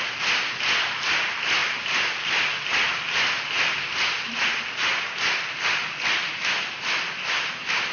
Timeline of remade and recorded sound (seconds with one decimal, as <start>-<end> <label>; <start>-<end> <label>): 0.0-7.9 recorded